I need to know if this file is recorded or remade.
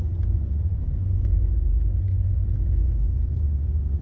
remade